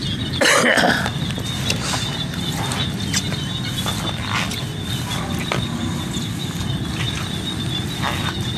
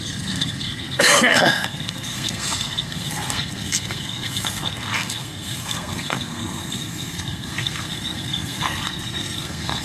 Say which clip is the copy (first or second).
second